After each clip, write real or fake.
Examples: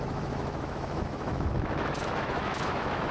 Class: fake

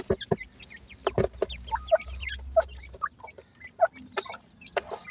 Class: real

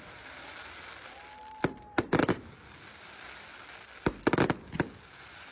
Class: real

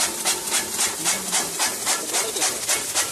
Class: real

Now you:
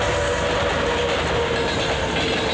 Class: real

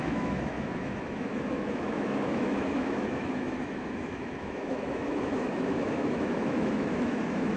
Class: fake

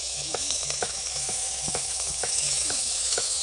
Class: fake